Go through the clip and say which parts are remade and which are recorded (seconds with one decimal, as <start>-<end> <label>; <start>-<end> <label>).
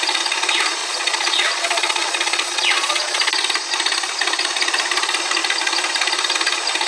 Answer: 0.0-0.8 recorded; 0.8-3.3 remade; 3.3-6.9 recorded